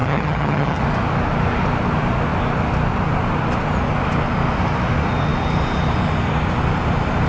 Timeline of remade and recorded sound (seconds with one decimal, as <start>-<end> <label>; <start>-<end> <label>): 0.0-0.8 remade; 0.8-7.3 recorded